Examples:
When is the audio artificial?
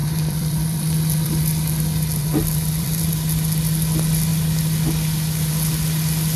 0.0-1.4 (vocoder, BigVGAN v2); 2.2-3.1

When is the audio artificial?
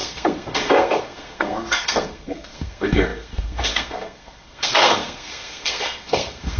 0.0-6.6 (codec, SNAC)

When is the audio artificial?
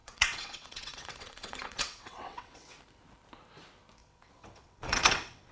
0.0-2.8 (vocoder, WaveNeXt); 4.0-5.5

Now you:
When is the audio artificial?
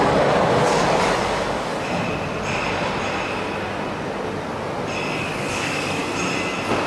0.0-1.7 (codec, DAC); 5.2-6.0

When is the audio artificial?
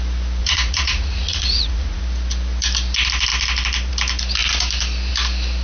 0.4-2.0 (vocoder, Vocos)